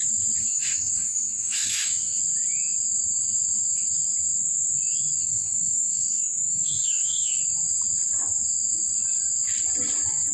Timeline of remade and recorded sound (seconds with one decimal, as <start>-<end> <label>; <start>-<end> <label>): 0.0-0.4 recorded; 0.4-2.2 remade; 2.2-5.2 recorded; 5.2-7.4 remade; 7.4-10.3 recorded